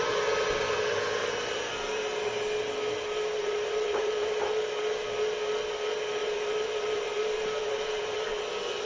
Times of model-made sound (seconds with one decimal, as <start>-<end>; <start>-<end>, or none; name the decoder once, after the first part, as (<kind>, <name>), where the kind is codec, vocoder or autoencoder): 1.2-2.0 (vocoder, BigVGAN v2); 3.4-4.7; 6.2-8.4